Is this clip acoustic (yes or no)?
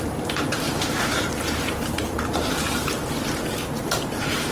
no